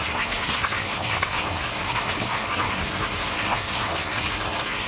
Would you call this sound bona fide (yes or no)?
no